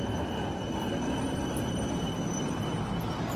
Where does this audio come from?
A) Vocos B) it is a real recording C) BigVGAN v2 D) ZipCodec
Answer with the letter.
B